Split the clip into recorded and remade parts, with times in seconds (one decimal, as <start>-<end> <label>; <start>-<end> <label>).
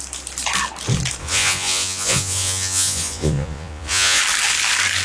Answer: 0.0-1.2 recorded; 1.2-4.2 remade; 4.2-5.0 recorded